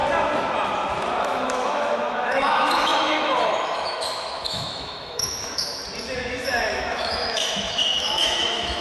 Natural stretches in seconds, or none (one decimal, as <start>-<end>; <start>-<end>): 0.0-1.2; 5.8-6.3